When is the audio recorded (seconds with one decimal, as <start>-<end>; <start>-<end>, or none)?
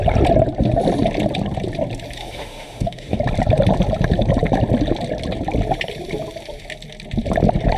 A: 0.0-2.2; 3.2-7.8